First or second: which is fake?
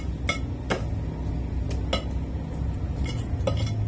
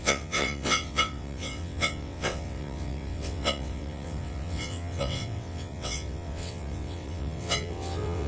second